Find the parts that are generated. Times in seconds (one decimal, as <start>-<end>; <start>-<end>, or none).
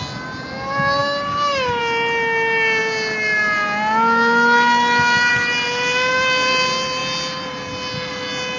1.0-1.8